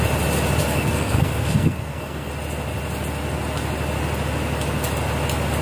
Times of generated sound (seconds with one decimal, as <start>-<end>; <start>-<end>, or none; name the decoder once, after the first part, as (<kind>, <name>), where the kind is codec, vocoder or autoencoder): 0.6-2.3 (codec, SNAC)